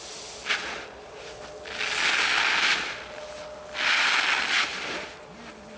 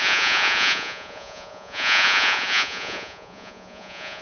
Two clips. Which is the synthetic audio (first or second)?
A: second